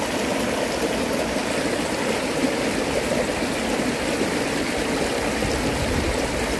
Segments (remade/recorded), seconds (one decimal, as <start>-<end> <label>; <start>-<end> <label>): 0.0-6.6 recorded